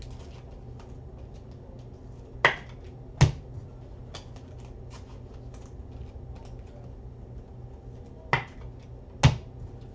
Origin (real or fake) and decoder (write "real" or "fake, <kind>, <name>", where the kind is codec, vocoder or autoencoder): real